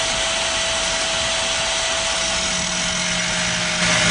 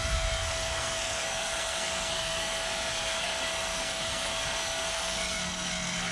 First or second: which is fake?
second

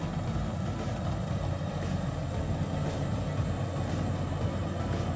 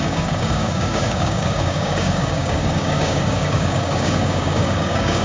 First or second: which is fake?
second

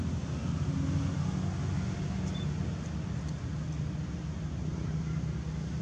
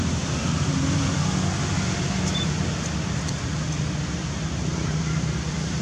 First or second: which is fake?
second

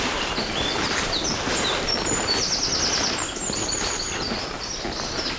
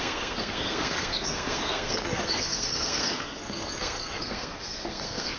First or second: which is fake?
second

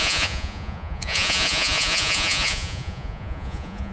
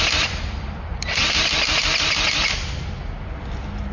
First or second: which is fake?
first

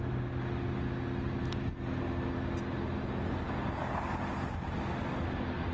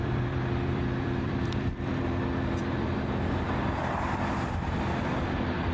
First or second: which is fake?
second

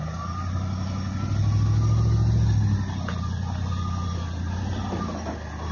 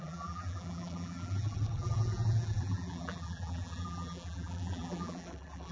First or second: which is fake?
second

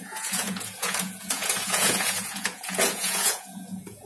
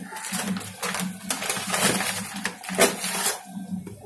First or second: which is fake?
first